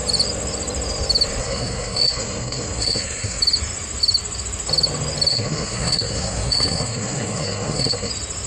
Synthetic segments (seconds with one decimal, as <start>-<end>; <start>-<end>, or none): 1.4-3.4; 5.3-8.1